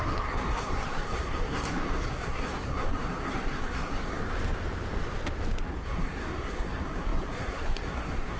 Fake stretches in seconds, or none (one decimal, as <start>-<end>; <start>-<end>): 0.0-4.2; 5.6-8.4